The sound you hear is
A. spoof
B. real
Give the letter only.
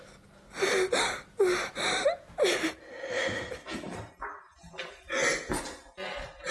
B